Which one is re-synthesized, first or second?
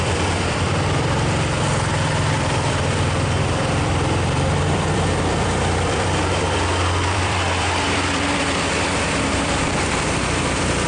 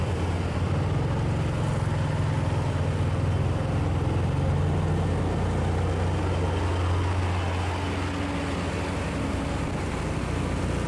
first